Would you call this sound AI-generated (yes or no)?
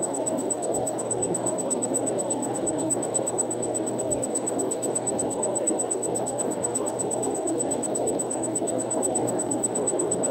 yes